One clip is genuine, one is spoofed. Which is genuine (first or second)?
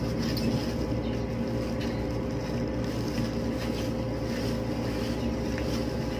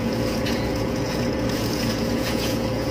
first